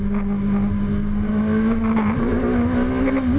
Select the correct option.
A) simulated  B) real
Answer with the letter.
B